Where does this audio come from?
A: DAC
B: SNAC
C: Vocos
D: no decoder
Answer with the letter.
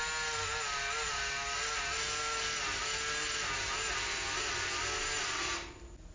D